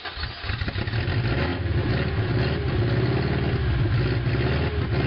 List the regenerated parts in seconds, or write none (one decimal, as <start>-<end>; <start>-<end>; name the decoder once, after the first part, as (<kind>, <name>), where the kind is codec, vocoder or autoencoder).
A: none